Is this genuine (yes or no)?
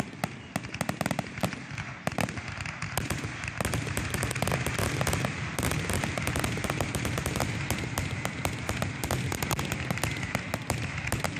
yes